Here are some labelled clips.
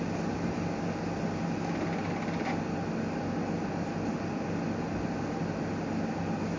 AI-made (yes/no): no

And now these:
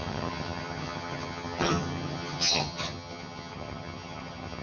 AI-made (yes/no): yes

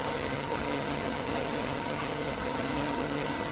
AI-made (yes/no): yes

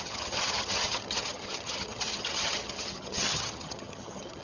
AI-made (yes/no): yes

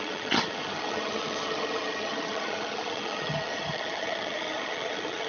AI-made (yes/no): yes